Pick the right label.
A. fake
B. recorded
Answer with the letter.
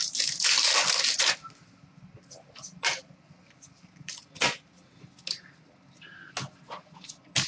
B